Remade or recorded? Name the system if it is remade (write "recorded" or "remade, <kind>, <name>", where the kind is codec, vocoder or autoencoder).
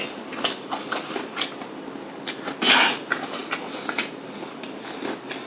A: recorded